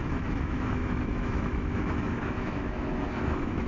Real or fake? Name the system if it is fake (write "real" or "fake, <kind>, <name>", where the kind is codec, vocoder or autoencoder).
fake, autoencoder, DAC-VAE